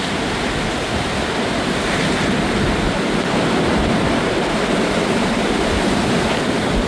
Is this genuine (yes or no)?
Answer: yes